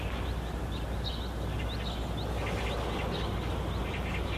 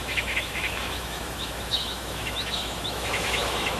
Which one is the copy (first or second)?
second